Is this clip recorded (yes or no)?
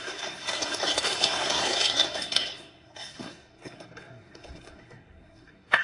no